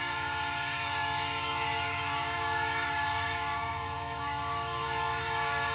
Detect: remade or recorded remade